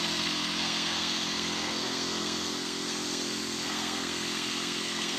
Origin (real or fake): fake